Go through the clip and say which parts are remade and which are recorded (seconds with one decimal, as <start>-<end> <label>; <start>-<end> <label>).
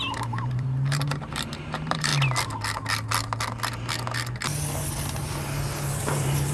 0.0-2.1 remade; 2.1-6.0 recorded; 6.0-6.5 remade